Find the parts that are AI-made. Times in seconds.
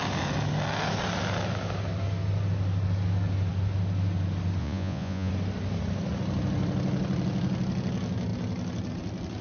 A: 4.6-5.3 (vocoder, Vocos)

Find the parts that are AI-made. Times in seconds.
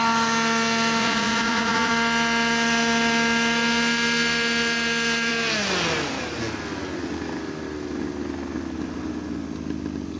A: 1.0-1.9 (vocoder, Vocos)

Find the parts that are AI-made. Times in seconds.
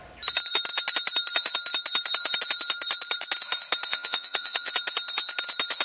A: 3.9-4.7 (vocoder, Vocos)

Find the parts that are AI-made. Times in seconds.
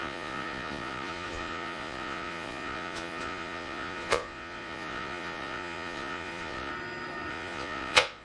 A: 0.0-6.7 (vocoder, Vocos); 7.3-8.2